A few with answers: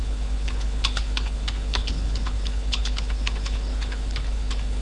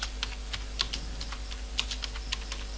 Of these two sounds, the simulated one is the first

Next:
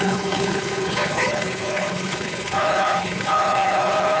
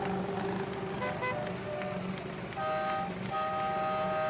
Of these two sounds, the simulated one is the first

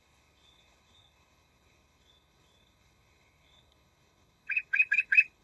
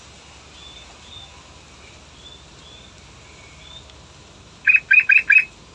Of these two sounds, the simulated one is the first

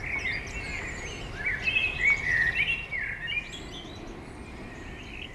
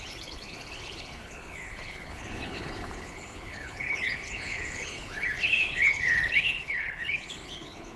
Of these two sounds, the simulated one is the second